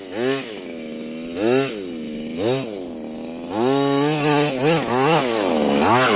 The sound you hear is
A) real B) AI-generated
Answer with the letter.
A